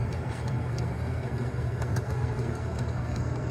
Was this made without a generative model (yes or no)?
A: no